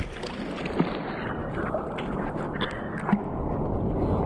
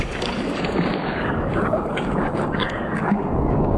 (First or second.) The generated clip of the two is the second